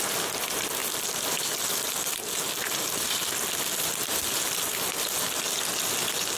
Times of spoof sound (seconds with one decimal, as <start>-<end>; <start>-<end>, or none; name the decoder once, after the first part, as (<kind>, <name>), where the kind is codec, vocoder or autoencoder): none